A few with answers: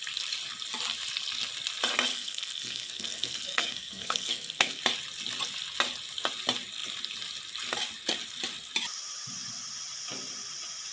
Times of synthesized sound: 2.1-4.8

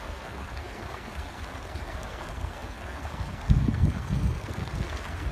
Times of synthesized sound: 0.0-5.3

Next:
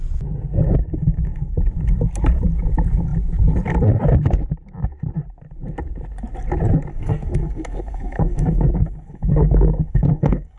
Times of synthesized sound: 0.8-1.6; 6.9-10.6

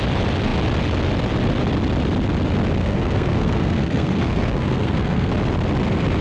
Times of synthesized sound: 2.8-5.3

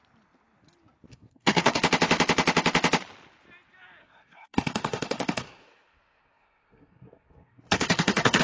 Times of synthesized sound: 1.1-1.8; 4.0-8.4

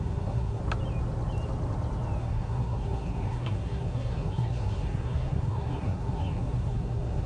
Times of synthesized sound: 0.0-0.6; 2.2-7.3